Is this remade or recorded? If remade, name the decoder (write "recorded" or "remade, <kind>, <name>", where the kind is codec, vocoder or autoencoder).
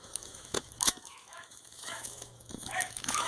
remade, autoencoder, DAC-VAE